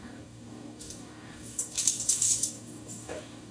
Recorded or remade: remade